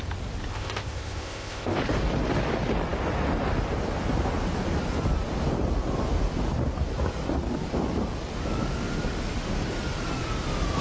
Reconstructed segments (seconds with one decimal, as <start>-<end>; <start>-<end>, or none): 0.5-1.8